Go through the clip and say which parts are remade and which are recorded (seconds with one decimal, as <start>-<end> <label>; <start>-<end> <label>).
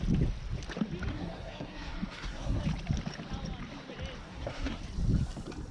0.0-1.1 recorded; 1.1-2.6 remade; 2.6-4.2 recorded; 4.2-4.8 remade; 4.8-5.7 recorded